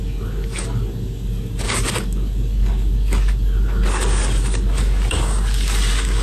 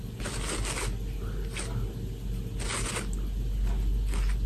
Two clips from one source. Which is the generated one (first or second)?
first